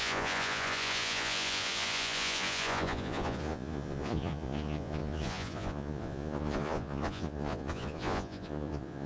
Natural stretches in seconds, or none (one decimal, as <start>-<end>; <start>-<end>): none